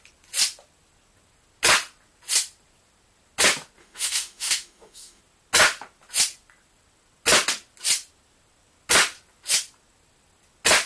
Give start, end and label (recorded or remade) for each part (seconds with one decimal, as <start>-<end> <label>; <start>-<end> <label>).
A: 0.0-3.8 recorded; 3.8-5.2 remade; 5.2-10.9 recorded